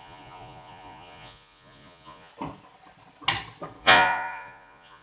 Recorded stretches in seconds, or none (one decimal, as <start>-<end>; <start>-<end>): 2.3-3.8